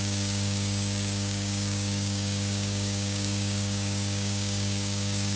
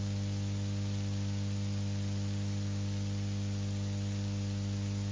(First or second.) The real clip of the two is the second